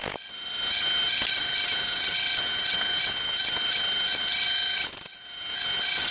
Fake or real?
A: real